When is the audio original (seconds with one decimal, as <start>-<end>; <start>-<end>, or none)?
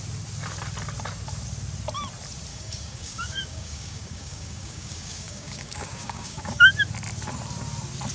0.0-2.5; 6.7-8.1